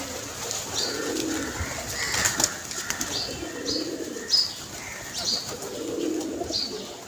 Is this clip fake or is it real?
real